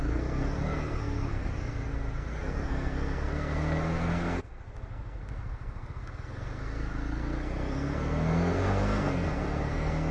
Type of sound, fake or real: fake